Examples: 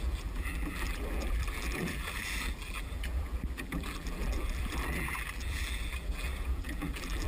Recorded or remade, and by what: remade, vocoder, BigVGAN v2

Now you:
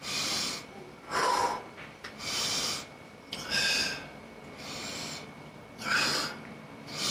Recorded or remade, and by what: remade, vocoder, BigVGAN v2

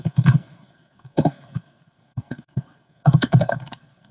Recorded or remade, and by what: remade, codec, SNAC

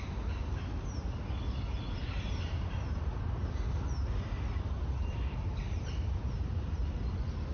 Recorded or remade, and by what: recorded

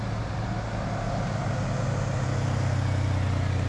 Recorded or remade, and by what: recorded